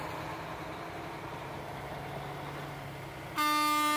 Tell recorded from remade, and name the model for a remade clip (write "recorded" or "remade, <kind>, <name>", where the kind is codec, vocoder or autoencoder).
recorded